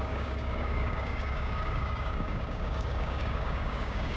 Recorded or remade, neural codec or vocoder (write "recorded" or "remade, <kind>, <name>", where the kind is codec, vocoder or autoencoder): remade, codec, DAC